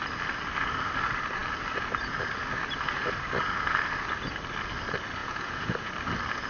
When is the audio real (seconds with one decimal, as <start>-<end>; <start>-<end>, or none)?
0.0-5.2; 5.9-6.5